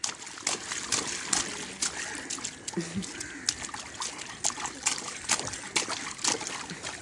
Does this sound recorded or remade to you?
recorded